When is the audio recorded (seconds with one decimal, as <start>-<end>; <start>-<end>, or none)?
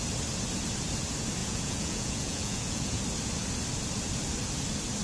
0.0-1.4; 3.0-5.0